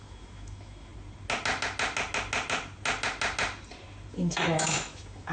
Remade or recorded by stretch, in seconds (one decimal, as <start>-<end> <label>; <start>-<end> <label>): 0.0-0.9 remade; 0.9-4.1 recorded; 4.1-5.3 remade